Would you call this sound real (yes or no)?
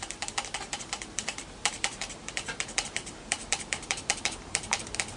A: no